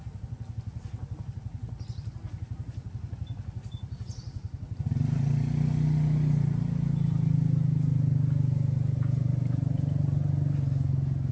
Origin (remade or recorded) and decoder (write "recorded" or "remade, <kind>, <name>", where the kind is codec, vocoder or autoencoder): recorded